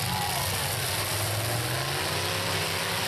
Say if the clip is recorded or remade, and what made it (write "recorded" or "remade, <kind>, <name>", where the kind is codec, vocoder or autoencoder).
recorded